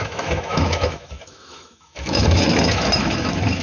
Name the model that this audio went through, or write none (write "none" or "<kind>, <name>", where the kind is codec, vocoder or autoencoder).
autoencoder, DAC-VAE